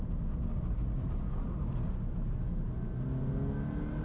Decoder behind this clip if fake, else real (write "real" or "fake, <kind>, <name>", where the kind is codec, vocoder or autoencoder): real